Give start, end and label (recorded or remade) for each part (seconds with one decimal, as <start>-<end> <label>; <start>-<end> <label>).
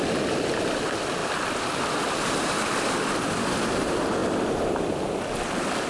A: 0.0-1.2 recorded; 1.2-3.7 remade; 3.7-5.9 recorded